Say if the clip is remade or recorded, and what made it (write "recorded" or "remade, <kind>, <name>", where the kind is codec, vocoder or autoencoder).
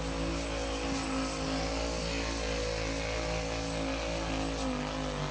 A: recorded